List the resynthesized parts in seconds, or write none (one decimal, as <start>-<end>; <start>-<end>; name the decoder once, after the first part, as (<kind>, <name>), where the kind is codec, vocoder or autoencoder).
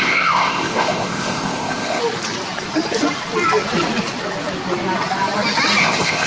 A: 0.0-2.0 (codec, ZipCodec); 5.8-6.3